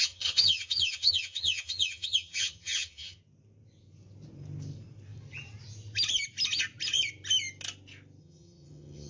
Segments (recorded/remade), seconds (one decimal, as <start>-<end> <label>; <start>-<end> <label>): 0.0-3.2 remade; 3.2-8.2 recorded; 8.2-9.1 remade